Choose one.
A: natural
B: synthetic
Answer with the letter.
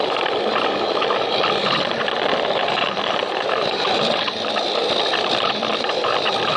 B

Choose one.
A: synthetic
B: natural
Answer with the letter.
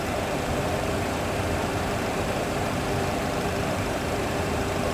A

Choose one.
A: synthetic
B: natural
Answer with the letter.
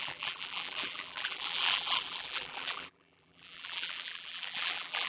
A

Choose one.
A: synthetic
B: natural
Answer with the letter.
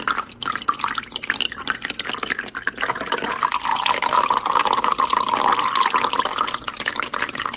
B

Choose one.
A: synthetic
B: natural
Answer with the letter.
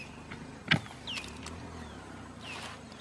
B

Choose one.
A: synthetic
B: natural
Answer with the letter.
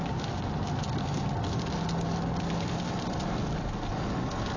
B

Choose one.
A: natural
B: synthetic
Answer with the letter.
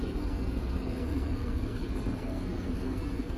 B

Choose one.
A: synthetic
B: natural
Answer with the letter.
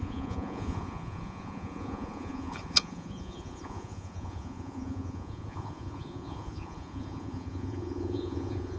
A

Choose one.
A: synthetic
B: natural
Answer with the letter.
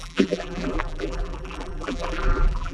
A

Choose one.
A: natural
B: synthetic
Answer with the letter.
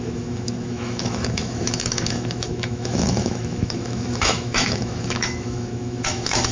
B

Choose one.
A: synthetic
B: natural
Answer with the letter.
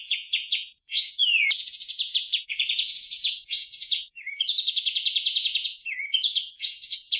A